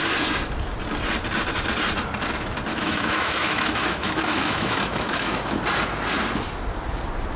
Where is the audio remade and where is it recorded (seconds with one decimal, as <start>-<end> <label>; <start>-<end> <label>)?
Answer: 0.0-2.7 recorded; 2.7-5.5 remade; 5.5-7.4 recorded